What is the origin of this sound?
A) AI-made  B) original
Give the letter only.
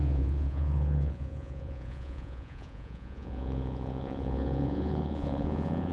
A